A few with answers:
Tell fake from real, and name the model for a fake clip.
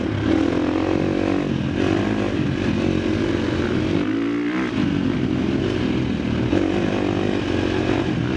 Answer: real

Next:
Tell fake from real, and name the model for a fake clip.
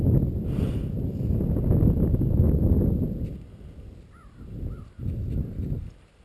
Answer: real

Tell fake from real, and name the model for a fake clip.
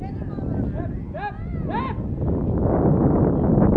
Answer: real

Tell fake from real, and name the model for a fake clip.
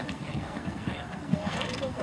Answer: fake, codec, SNAC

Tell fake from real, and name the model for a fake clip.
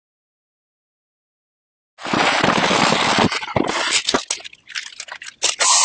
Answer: real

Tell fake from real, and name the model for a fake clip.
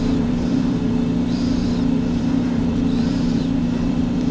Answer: fake, vocoder, BigVGAN v2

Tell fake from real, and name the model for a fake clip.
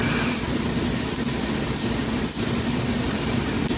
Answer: fake, vocoder, BigVGAN v2